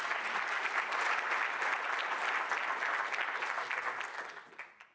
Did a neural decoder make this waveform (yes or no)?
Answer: no